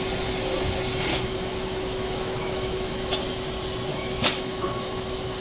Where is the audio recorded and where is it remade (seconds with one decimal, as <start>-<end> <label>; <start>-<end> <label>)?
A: 0.0-1.1 recorded; 1.1-2.9 remade; 2.9-3.9 recorded; 3.9-5.4 remade